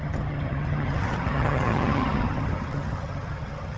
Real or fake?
fake